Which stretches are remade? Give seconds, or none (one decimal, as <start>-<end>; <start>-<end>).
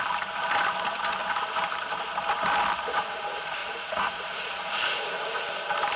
3.6-5.6